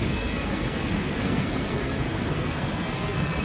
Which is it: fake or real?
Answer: fake